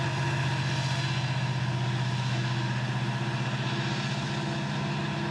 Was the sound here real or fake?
real